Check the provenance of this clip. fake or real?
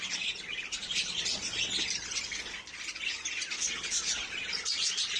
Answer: real